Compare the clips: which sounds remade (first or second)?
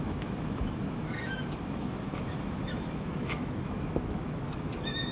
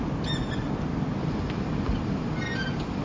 first